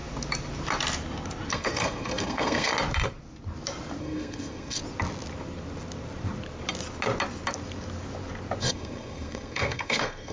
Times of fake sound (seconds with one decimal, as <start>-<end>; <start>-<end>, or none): 1.5-2.7; 4.0-4.8; 8.6-10.3